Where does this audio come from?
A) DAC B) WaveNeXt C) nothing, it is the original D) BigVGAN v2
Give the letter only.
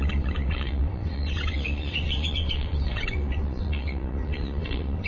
B